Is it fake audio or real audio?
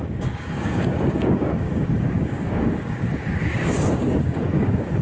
fake